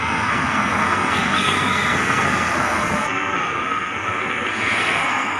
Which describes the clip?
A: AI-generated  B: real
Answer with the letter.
A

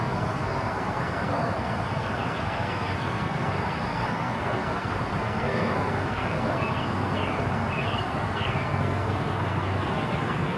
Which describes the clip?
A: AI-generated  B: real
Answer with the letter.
A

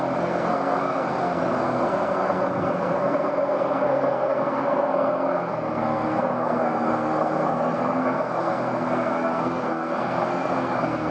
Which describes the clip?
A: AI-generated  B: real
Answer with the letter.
A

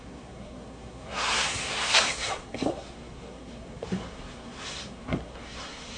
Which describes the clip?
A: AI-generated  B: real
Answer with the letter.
A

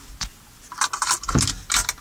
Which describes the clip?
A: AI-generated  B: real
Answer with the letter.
B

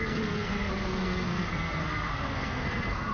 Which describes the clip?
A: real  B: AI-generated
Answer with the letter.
B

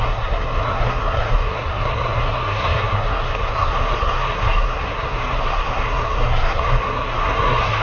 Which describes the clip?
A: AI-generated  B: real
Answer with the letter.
A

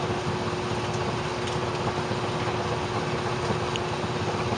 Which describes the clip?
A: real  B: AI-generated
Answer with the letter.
A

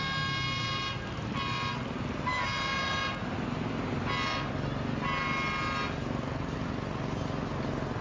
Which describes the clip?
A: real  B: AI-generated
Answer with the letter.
A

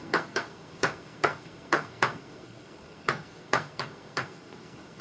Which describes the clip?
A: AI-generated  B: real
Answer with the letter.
A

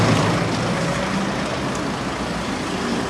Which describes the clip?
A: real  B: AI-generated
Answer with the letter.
A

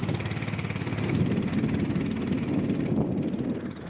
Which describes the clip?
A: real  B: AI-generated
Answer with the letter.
A